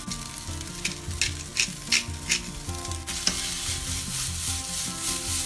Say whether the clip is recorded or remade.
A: recorded